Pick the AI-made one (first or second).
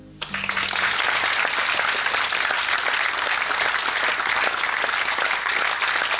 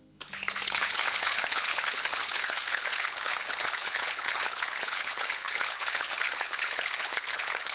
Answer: second